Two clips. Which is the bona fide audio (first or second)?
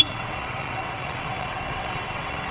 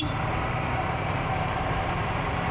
second